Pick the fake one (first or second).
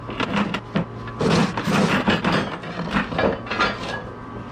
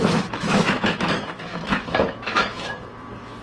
second